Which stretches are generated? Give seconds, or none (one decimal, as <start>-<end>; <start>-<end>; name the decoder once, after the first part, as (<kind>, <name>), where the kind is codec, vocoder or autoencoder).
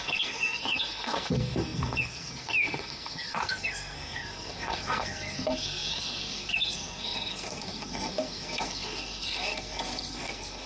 0.0-10.7 (codec, SNAC)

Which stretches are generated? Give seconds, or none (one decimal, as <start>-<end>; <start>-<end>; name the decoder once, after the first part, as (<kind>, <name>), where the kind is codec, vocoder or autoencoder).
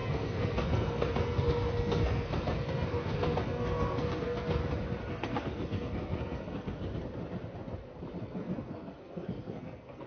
0.0-4.6 (codec, SNAC); 5.1-6.8; 8.2-10.1